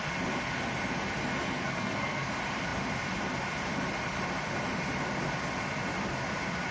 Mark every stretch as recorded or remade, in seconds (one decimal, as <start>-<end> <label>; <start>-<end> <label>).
0.0-1.5 recorded; 1.5-2.3 remade; 2.3-6.7 recorded

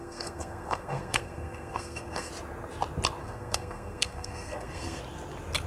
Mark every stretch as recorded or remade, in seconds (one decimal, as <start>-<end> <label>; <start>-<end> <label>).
0.0-2.3 remade; 2.3-3.2 recorded; 3.2-5.0 remade; 5.0-5.7 recorded

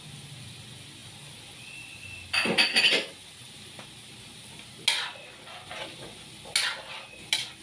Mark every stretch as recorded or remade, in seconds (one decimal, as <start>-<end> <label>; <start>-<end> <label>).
0.0-7.6 recorded

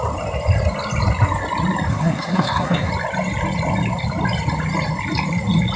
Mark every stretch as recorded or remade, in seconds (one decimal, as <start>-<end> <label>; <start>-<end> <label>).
0.0-1.9 recorded; 1.9-2.9 remade; 2.9-5.8 recorded

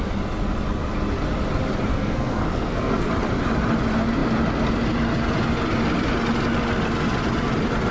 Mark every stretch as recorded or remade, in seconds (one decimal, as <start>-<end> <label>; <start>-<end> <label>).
0.0-1.9 recorded; 1.9-3.1 remade; 3.1-7.9 recorded

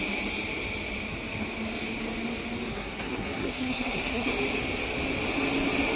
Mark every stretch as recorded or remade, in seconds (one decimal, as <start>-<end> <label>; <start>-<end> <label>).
0.0-2.7 recorded; 2.7-4.3 remade; 4.3-6.0 recorded

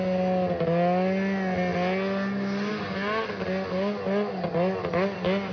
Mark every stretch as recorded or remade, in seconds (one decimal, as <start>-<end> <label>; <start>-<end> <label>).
0.0-5.5 recorded

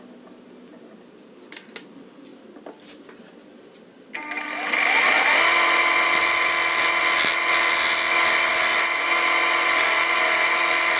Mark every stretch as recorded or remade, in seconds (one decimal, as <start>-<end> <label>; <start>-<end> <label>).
0.0-11.0 recorded